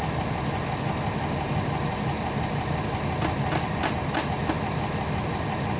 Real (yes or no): yes